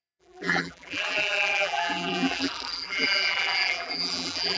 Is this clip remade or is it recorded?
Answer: remade